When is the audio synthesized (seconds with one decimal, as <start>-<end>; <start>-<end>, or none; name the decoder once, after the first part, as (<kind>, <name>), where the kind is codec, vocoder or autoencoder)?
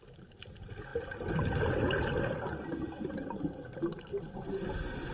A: none